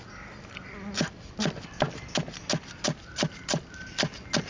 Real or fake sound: real